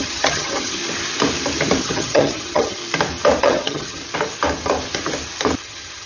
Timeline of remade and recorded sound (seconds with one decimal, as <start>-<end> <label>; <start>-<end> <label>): 0.0-0.8 remade; 0.8-1.8 recorded; 1.8-2.8 remade; 2.8-3.4 recorded; 3.4-4.0 remade; 4.0-5.6 recorded; 5.6-6.1 remade